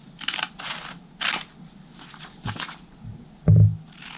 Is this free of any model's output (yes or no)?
yes